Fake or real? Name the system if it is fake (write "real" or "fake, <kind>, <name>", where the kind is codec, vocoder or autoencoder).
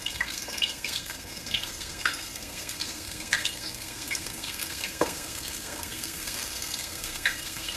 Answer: fake, codec, SNAC